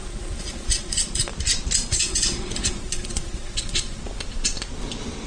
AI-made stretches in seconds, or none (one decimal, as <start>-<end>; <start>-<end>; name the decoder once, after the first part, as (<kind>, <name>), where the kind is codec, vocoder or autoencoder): 0.0-1.3 (vocoder, Vocos); 1.9-4.0